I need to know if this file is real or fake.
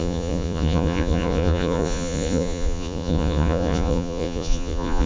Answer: fake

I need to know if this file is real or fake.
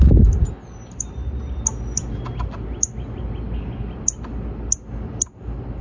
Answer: real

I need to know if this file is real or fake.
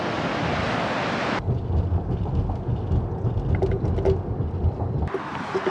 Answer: real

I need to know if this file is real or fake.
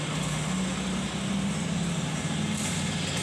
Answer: real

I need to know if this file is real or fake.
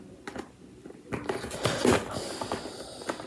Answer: real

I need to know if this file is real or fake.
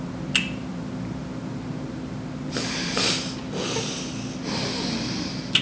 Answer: real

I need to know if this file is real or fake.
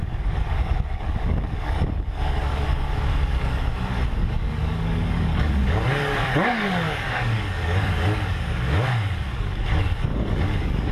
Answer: fake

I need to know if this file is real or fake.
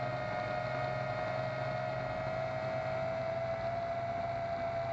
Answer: real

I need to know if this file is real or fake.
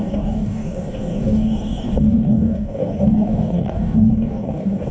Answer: fake